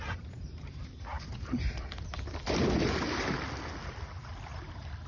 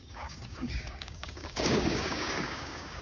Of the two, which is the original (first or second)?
first